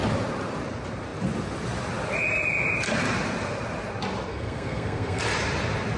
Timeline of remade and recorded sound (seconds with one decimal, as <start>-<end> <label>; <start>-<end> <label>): 0.0-4.3 recorded; 4.3-5.2 remade; 5.2-6.0 recorded

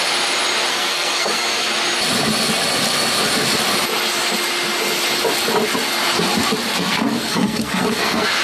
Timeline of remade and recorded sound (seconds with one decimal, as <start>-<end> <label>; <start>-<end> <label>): 0.0-0.7 recorded; 0.7-1.7 remade; 1.7-6.7 recorded; 6.7-8.4 remade

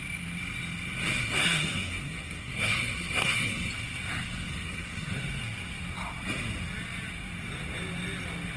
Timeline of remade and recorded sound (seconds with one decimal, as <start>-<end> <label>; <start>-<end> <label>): 0.0-1.2 recorded; 1.2-3.7 remade; 3.7-4.5 recorded; 4.5-5.1 remade; 5.1-8.6 recorded

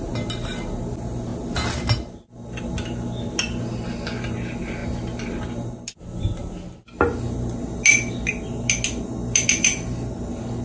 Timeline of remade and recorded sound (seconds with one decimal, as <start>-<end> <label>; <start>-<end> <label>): 0.0-10.6 recorded

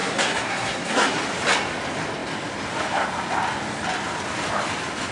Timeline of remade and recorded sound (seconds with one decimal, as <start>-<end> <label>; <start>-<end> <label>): 0.0-1.2 remade; 1.2-5.1 recorded

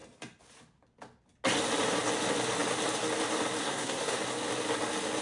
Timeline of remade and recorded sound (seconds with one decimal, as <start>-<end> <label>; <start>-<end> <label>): 0.0-3.6 recorded; 3.6-4.2 remade; 4.2-5.2 recorded

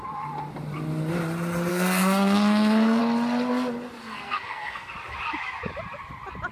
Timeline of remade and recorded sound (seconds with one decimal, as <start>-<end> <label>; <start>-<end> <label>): 0.0-1.7 recorded; 1.7-3.0 remade; 3.0-4.0 recorded; 4.0-4.9 remade; 4.9-6.5 recorded

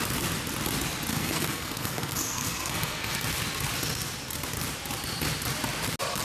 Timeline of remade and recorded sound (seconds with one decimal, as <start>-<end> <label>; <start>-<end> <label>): 0.0-1.1 recorded; 1.1-3.1 remade; 3.1-6.2 recorded